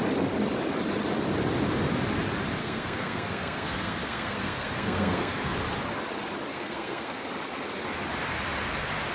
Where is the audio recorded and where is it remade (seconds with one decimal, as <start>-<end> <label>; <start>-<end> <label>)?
0.0-2.6 recorded; 2.6-5.5 remade; 5.5-6.5 recorded; 6.5-7.3 remade; 7.3-9.1 recorded